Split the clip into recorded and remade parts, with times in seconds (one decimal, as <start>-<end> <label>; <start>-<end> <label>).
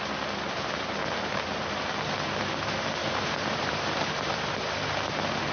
0.0-1.0 recorded; 1.0-1.7 remade; 1.7-3.0 recorded; 3.0-4.5 remade; 4.5-5.5 recorded